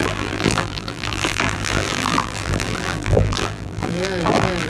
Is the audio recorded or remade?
remade